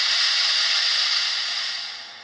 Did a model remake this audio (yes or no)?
yes